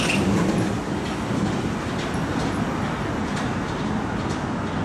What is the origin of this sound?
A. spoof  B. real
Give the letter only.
B